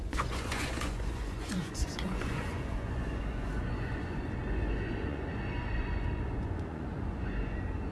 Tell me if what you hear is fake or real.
fake